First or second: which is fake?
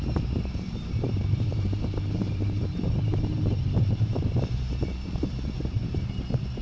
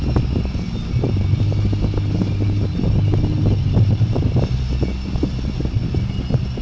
first